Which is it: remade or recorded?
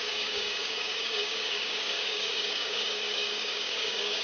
remade